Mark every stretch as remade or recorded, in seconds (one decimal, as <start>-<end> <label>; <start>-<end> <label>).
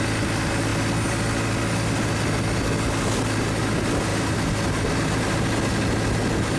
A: 0.0-6.6 recorded